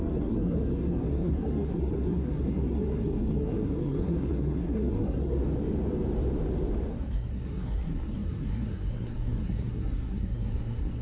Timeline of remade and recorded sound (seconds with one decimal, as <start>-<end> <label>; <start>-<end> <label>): 0.0-5.4 remade; 5.4-6.9 recorded; 6.9-11.0 remade